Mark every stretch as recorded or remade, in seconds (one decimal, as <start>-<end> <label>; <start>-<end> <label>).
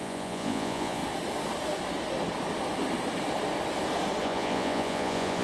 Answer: 0.0-1.0 remade; 1.0-4.2 recorded; 4.2-5.4 remade